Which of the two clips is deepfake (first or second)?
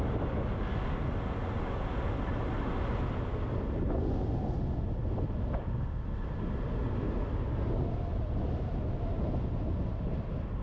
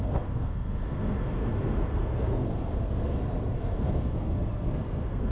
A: second